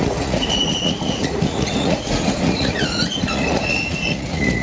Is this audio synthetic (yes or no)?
yes